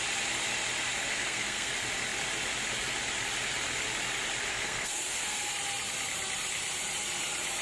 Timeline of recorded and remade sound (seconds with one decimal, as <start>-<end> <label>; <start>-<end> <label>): 0.0-1.1 recorded; 1.1-1.7 remade; 1.7-4.5 recorded; 4.5-5.5 remade; 5.5-7.6 recorded